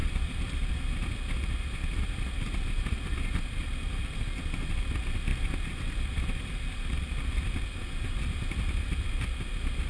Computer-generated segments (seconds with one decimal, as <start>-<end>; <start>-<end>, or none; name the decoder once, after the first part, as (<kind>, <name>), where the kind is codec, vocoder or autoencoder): 0.0-0.7 (vocoder, BigVGAN v2); 1.8-4.5; 5.3-9.9